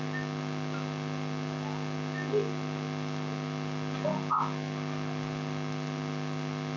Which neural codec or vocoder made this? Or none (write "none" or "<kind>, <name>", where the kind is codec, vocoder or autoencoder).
none